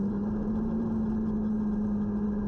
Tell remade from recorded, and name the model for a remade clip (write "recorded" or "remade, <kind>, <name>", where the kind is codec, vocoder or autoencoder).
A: recorded